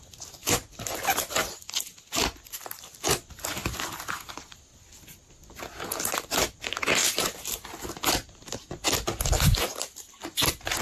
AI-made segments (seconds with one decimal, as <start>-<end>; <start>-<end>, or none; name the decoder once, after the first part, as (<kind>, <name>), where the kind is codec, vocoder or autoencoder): 0.4-1.8 (vocoder, BigVGAN v2)